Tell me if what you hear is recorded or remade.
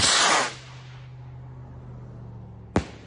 recorded